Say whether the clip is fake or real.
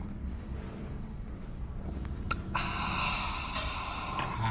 real